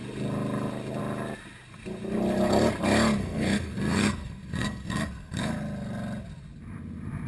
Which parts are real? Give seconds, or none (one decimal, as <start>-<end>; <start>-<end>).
0.0-3.2; 5.6-7.3